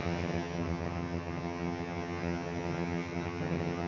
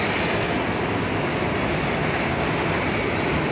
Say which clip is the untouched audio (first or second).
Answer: second